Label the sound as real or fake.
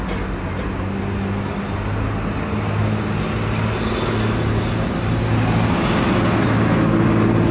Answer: real